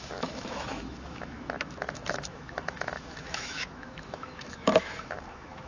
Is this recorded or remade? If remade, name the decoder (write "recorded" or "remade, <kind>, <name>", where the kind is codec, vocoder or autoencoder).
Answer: remade, autoencoder, DAC-VAE